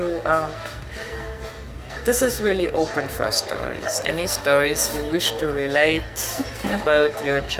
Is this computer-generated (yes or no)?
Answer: yes